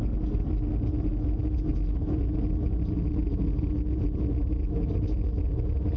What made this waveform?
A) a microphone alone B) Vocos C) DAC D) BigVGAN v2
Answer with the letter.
A